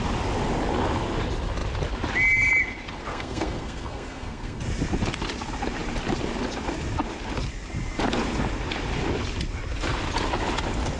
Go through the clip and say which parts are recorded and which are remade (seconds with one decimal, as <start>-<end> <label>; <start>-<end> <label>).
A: 0.0-3.1 recorded; 3.1-4.6 remade; 4.6-11.0 recorded

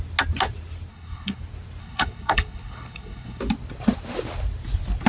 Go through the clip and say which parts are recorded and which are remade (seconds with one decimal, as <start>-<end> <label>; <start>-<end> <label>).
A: 0.0-0.9 recorded; 0.9-1.4 remade; 1.4-1.8 recorded; 1.8-3.4 remade; 3.4-5.1 recorded

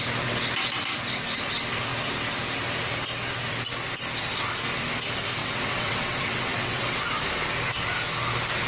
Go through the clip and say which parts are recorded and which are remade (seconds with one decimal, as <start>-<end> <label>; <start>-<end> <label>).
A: 0.0-5.4 recorded; 5.4-7.0 remade; 7.0-8.7 recorded

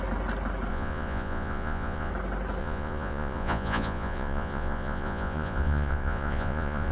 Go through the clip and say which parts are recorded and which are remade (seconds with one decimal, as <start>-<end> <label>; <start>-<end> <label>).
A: 0.0-0.7 recorded; 0.7-2.1 remade; 2.1-2.6 recorded; 2.6-6.9 remade

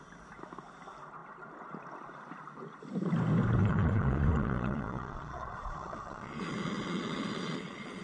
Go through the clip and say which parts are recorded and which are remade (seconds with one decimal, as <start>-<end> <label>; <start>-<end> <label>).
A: 0.0-3.6 recorded; 3.6-8.0 remade